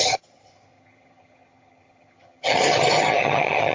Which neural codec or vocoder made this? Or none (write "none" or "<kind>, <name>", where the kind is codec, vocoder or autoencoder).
vocoder, HiFi-GAN